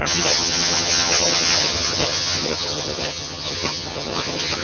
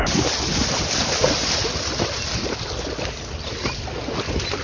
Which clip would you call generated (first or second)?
first